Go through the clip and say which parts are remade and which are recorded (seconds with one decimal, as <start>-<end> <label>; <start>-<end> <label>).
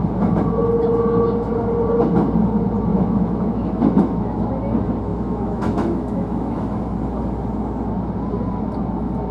0.0-2.9 recorded; 2.9-4.5 remade; 4.5-5.1 recorded; 5.1-6.8 remade; 6.8-9.3 recorded